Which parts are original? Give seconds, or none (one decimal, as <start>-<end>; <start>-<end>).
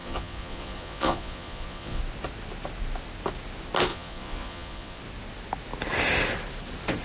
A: 2.0-3.9; 5.0-7.0